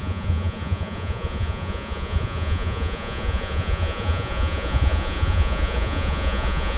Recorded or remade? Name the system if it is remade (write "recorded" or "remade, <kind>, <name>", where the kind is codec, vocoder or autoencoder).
remade, vocoder, Vocos